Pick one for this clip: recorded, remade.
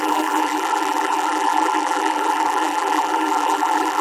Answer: remade